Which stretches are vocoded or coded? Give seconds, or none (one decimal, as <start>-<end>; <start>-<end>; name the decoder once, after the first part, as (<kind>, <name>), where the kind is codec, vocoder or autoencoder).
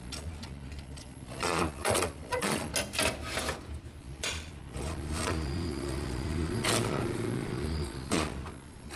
0.0-2.7 (vocoder, Vocos); 4.0-9.0